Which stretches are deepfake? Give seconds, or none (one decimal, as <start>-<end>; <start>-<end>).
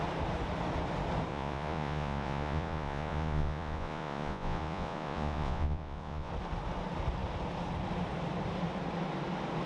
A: 1.3-6.3